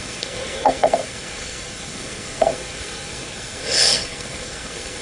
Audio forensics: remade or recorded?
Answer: remade